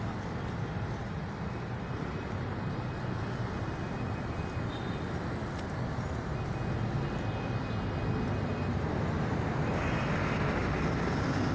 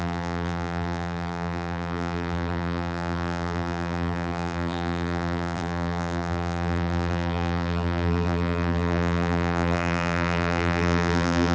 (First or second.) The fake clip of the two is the second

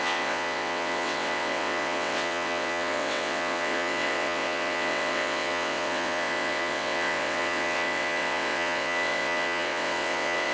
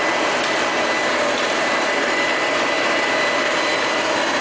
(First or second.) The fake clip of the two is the first